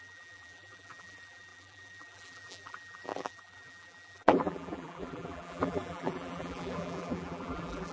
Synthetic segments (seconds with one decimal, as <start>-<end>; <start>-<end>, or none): 0.0-7.9